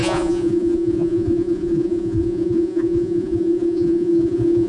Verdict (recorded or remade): remade